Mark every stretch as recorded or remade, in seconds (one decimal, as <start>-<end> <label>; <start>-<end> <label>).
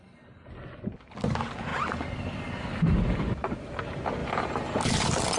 0.0-5.4 recorded